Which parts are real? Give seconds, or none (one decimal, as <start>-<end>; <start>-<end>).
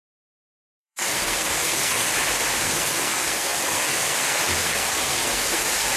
2.1-2.6